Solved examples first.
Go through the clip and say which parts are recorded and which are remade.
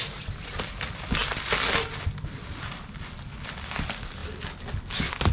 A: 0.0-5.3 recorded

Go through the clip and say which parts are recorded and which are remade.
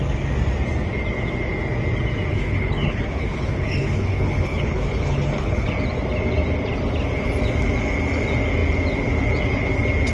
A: 0.0-2.3 recorded; 2.3-5.7 remade; 5.7-10.1 recorded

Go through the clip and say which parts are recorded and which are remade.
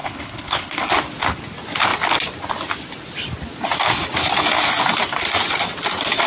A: 0.0-0.8 remade; 0.8-6.3 recorded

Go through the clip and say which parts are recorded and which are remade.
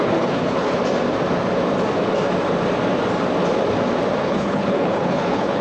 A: 0.0-0.8 remade; 0.8-4.2 recorded; 4.2-5.6 remade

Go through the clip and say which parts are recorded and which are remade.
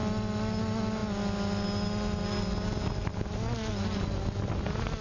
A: 0.0-5.0 recorded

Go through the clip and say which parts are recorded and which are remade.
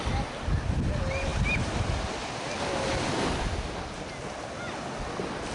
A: 0.0-5.5 recorded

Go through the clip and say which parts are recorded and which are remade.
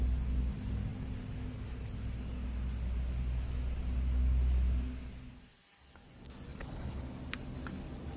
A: 0.0-6.5 recorded; 6.5-7.0 remade; 7.0-8.2 recorded